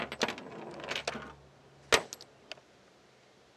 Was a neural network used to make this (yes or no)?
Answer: no